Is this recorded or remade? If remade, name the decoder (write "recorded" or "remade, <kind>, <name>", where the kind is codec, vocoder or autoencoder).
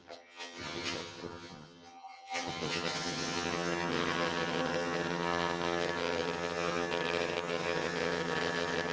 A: remade, vocoder, HiFi-GAN